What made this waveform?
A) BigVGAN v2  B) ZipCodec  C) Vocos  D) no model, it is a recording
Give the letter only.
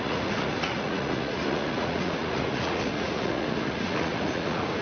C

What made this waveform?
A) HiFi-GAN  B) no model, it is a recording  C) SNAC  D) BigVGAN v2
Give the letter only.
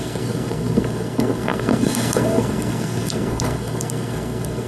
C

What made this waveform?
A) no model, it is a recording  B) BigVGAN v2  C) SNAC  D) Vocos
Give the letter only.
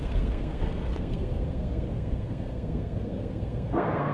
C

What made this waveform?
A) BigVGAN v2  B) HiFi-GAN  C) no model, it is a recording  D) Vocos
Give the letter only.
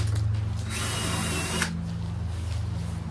C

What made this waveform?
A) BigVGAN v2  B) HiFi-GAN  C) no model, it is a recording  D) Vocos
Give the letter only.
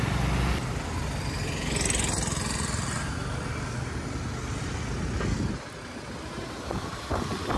C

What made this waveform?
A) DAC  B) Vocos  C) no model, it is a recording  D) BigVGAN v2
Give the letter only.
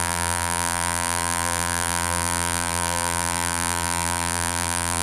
D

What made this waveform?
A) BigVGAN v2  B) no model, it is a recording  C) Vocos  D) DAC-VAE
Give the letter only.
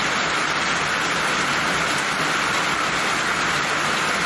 B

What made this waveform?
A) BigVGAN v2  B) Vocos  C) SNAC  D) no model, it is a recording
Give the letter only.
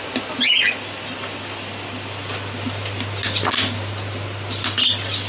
D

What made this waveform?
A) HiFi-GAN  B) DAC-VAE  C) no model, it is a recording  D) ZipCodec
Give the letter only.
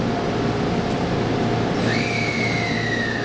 C